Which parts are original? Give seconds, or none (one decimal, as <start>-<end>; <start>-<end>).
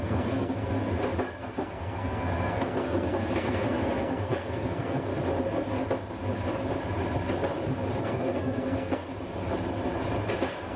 0.8-1.4; 5.1-8.0; 9.1-10.4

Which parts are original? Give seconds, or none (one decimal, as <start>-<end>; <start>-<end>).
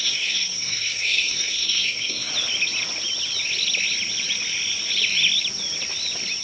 2.3-6.4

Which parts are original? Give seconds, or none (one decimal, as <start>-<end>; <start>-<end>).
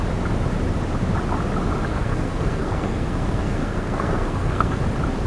0.0-1.9; 4.8-5.3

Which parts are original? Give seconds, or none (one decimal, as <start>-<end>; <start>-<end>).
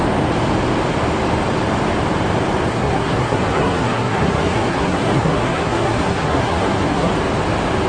0.0-2.7; 7.1-7.9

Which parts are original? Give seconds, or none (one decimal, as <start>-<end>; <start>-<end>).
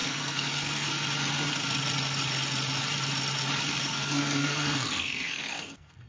0.9-3.9